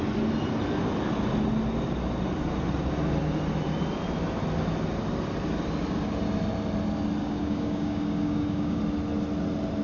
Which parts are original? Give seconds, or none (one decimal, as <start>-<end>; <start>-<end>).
0.0-7.2; 8.8-9.8